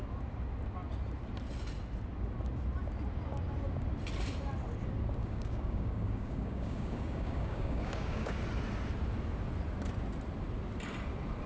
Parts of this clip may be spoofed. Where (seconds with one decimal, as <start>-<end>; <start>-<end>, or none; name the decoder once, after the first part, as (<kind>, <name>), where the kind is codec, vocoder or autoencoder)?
5.2-8.3 (codec, DAC)